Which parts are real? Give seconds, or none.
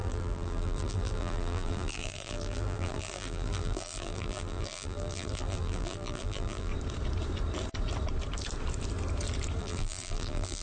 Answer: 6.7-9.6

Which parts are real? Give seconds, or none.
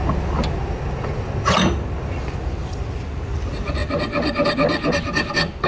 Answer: 0.0-5.7